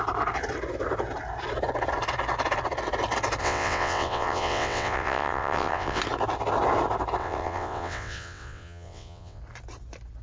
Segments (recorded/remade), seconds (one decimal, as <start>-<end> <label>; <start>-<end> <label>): 0.0-3.4 recorded; 3.4-6.0 remade; 6.0-7.2 recorded; 7.2-9.4 remade; 9.4-10.2 recorded